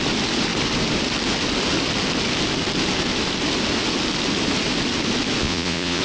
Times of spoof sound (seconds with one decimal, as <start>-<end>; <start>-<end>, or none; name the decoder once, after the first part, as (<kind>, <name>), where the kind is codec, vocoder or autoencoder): 5.4-6.0 (vocoder, Vocos)